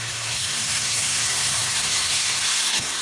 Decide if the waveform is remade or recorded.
remade